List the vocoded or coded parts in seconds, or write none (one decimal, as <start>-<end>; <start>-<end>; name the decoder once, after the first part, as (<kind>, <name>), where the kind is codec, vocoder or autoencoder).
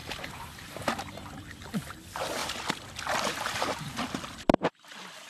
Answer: 0.0-0.5 (vocoder, BigVGAN v2)